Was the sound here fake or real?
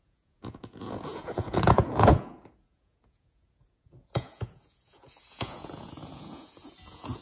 fake